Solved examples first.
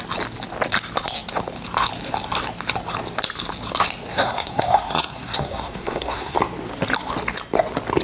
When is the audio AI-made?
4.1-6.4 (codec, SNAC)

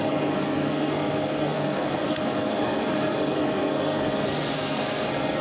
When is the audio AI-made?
0.0-5.4 (codec, SNAC)